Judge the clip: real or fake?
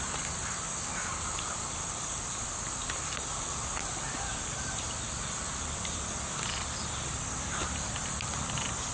fake